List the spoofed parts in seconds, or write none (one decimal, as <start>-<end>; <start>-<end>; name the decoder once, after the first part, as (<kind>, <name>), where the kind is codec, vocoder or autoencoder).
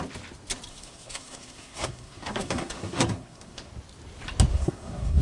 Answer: 0.7-3.7 (codec, SNAC); 4.5-5.2